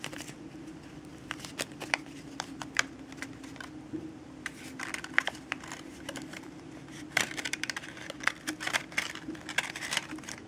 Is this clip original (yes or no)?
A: no